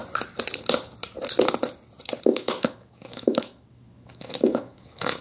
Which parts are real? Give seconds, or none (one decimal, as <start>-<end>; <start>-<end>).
0.0-2.3

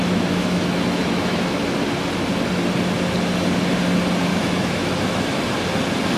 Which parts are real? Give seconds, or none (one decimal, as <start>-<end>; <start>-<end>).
1.6-4.3; 5.4-6.2